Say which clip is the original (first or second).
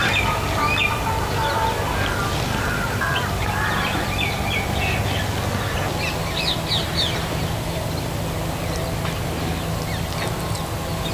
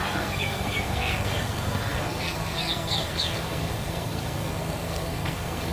first